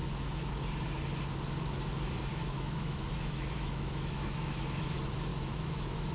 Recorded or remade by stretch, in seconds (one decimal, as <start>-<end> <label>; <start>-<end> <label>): 0.0-2.3 recorded; 2.3-4.5 remade; 4.5-5.3 recorded; 5.3-6.1 remade